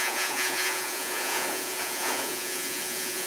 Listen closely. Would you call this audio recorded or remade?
remade